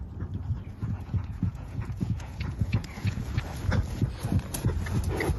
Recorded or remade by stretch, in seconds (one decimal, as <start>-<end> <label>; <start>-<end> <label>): 0.0-0.8 recorded; 0.8-3.2 remade; 3.2-5.4 recorded